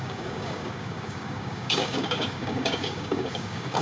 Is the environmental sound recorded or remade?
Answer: remade